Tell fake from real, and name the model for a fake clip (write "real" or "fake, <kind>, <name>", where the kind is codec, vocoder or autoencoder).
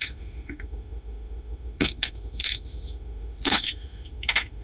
fake, autoencoder, DAC-VAE